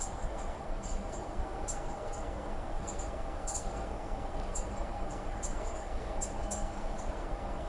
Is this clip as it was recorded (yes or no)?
no